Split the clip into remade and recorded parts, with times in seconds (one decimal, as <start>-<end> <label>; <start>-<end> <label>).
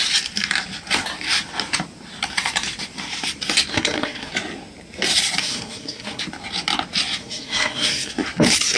0.0-3.7 recorded; 3.7-4.3 remade; 4.3-5.4 recorded; 5.4-6.2 remade; 6.2-7.2 recorded; 7.2-8.1 remade; 8.1-8.8 recorded